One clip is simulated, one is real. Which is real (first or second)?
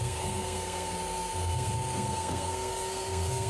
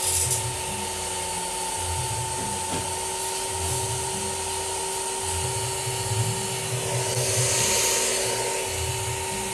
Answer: second